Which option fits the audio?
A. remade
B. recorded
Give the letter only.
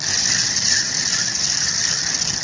B